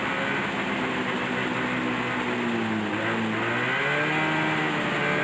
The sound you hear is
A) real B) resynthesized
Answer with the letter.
A